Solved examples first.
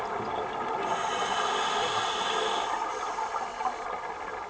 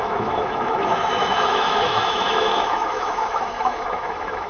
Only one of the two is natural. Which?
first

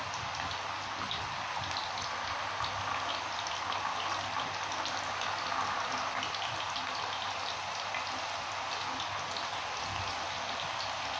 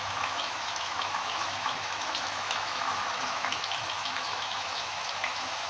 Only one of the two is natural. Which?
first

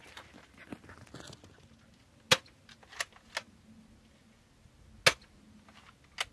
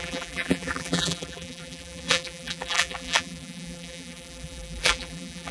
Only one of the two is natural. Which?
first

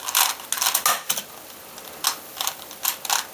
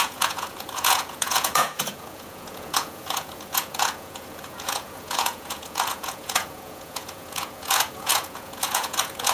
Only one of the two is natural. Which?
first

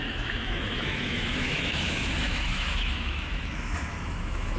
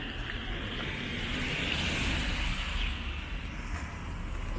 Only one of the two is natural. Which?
second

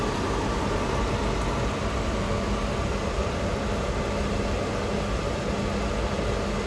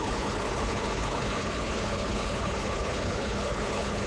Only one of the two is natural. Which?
first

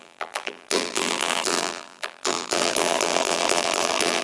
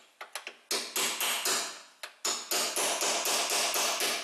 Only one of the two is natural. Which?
second